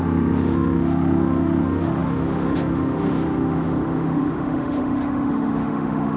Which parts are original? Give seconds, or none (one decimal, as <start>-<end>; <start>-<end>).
none